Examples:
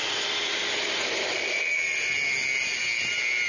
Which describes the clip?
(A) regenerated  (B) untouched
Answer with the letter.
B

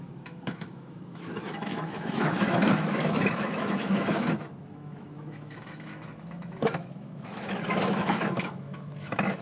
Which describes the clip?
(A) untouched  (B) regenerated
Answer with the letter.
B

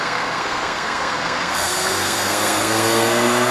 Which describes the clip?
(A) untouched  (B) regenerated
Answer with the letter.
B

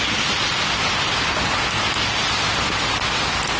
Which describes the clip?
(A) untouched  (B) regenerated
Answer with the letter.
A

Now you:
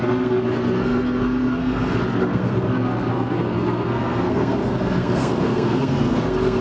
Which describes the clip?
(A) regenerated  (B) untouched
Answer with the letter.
A